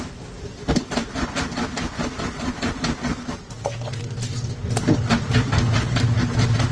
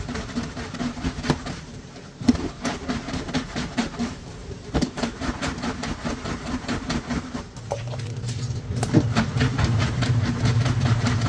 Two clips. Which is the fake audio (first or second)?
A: second